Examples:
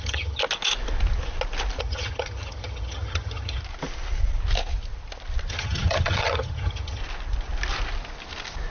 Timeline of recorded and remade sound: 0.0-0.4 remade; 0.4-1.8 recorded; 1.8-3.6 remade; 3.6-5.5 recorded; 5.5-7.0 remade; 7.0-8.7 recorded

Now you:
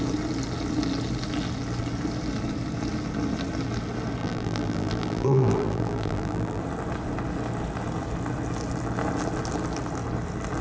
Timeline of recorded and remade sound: 0.0-4.2 recorded; 4.2-6.6 remade; 6.6-10.6 recorded

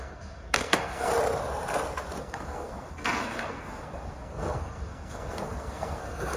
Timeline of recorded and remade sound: 0.0-1.1 remade; 1.1-2.2 recorded; 2.2-6.4 remade

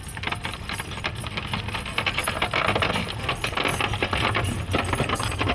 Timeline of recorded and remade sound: 0.0-5.5 recorded

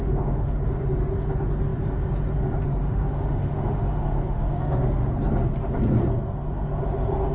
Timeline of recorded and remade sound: 0.0-0.6 remade; 0.6-2.8 recorded; 2.8-5.1 remade; 5.1-7.3 recorded

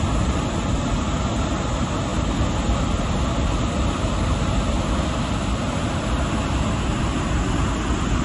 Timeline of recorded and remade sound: 0.0-8.2 recorded

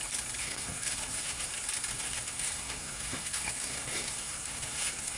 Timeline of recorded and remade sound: 0.0-0.4 recorded; 0.4-1.5 remade; 1.5-1.9 recorded; 1.9-5.2 remade

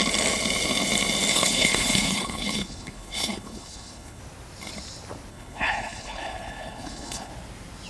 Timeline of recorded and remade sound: 0.0-1.3 recorded; 1.3-4.2 remade; 4.2-5.3 recorded; 5.3-7.3 remade; 7.3-7.9 recorded